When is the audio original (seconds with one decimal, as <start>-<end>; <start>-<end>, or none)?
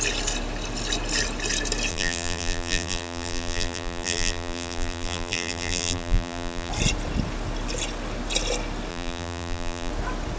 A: 0.0-1.9; 6.7-8.9; 9.9-10.4